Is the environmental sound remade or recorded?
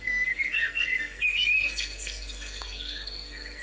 remade